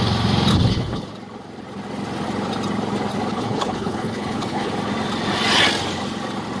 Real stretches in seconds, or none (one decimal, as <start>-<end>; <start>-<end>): 0.0-0.5; 1.1-3.3; 4.7-6.6